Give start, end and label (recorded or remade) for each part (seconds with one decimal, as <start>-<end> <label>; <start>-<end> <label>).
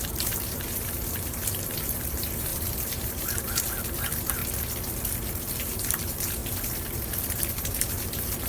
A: 0.0-4.4 remade; 4.4-5.6 recorded; 5.6-6.4 remade; 6.4-7.5 recorded; 7.5-8.5 remade